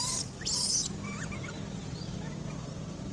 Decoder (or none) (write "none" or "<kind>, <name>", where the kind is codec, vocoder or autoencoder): none